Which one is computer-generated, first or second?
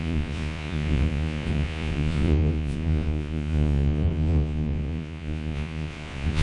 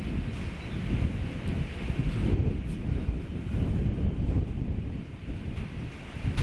first